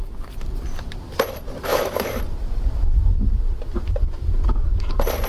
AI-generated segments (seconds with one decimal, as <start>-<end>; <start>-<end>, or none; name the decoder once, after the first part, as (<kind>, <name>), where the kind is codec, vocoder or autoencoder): 1.7-2.2 (autoencoder, DAC-VAE)